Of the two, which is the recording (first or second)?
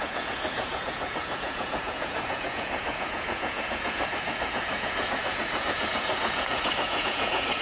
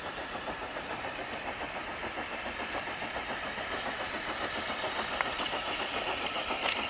second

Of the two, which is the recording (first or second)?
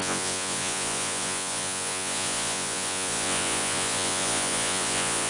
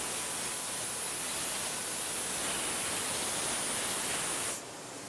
second